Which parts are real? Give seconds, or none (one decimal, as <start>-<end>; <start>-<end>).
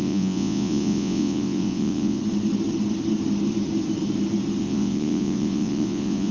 2.2-4.6